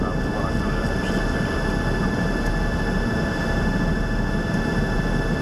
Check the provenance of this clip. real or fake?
real